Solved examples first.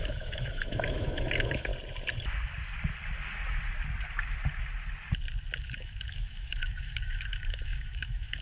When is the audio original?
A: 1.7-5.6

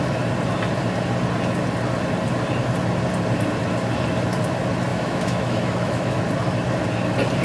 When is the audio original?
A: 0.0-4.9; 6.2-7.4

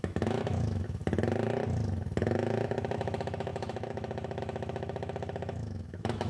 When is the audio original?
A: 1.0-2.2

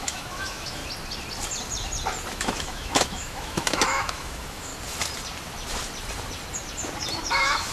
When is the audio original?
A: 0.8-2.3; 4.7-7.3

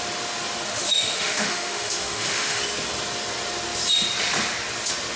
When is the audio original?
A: 0.0-0.7; 2.6-5.2

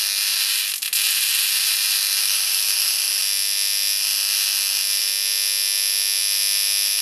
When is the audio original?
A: 0.0-2.2; 3.2-7.0